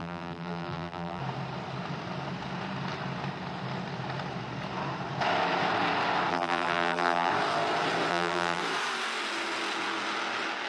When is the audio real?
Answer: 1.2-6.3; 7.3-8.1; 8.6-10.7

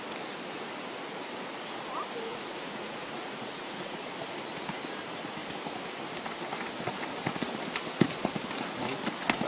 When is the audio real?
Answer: 0.0-2.3; 4.1-9.5

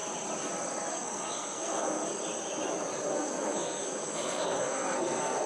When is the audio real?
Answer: 0.0-0.9; 2.0-3.1

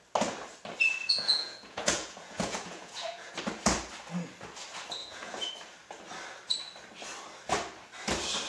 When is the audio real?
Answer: 0.0-1.0; 3.3-5.0; 5.5-8.5